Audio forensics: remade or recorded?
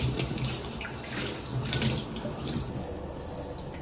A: recorded